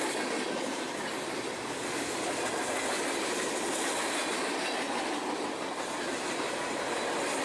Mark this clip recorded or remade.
recorded